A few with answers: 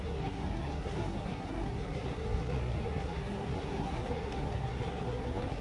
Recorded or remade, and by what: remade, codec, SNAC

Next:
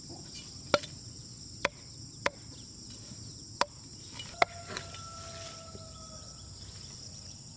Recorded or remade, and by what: recorded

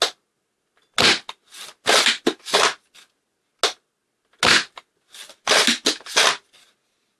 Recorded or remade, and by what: recorded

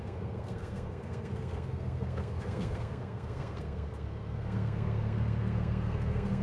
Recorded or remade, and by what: remade, codec, SNAC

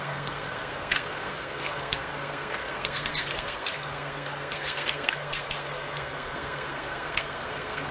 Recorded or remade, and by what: remade, codec, SNAC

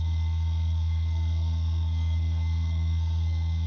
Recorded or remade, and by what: remade, codec, SNAC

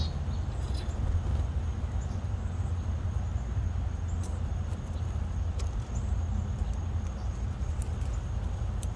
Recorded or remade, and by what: recorded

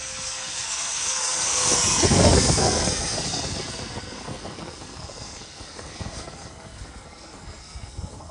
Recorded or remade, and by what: remade, codec, SNAC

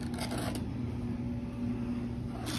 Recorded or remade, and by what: recorded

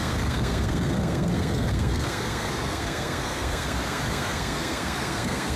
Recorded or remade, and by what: remade, codec, SNAC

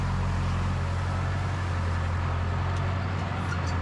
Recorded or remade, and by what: recorded